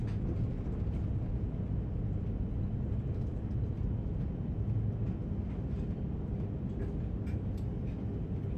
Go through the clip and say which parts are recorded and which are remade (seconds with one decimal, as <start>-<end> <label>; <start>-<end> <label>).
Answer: 0.0-8.6 recorded